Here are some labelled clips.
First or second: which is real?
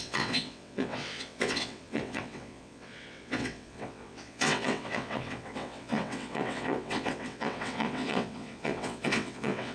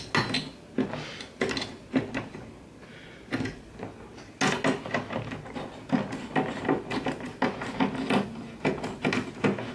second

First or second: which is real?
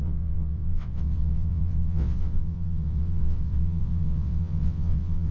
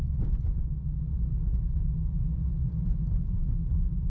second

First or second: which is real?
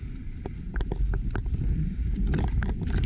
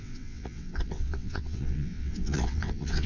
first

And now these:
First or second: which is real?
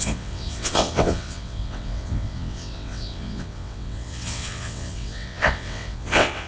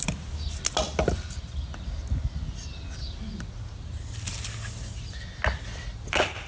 second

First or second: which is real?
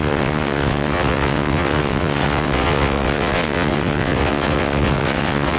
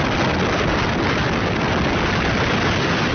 second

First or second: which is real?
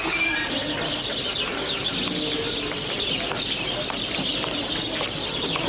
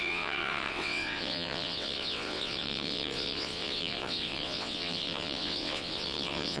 first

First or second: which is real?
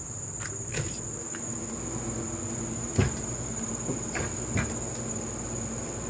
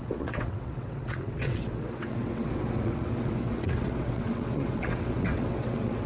first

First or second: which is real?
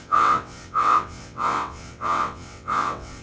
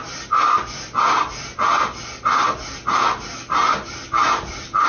second